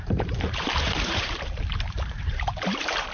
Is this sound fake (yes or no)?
yes